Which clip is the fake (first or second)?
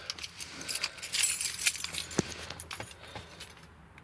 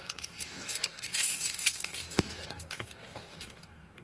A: second